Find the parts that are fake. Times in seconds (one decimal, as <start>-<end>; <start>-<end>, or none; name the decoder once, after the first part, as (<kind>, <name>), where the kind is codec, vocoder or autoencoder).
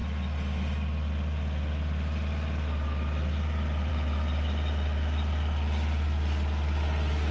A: none